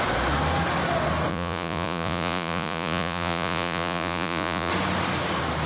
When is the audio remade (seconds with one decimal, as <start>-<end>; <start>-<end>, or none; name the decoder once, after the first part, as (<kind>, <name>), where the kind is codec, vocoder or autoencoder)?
1.3-4.7 (vocoder, Vocos)